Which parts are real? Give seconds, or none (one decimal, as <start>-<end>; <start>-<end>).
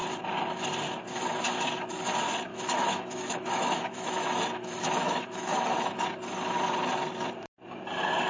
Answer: 0.0-2.5; 6.0-8.3